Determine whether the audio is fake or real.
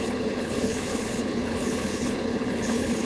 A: fake